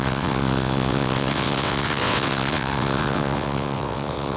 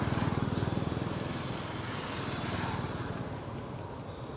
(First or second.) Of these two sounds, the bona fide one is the second